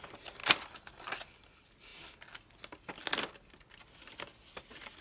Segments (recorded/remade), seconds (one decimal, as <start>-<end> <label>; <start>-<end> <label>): 0.0-5.0 recorded